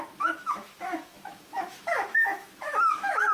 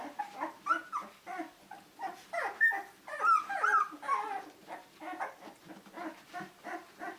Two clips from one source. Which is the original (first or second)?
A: second